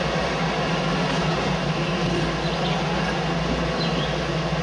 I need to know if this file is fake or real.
real